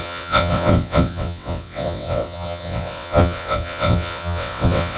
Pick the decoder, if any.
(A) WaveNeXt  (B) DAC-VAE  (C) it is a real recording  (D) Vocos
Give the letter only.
A